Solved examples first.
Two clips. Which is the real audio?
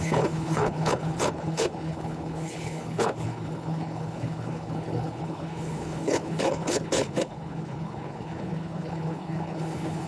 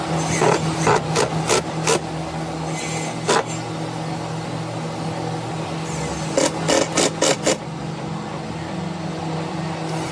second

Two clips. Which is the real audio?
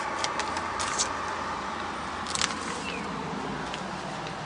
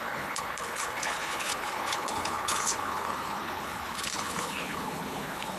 first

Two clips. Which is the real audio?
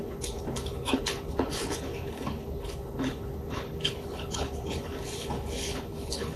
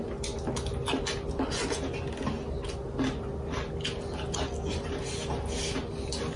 second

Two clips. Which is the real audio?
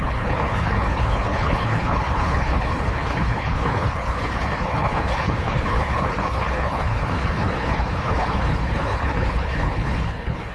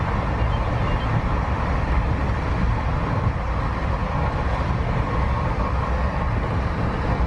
second